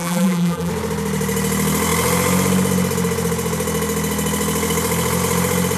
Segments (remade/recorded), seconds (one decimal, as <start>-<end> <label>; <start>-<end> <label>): 0.0-0.7 remade; 0.7-5.8 recorded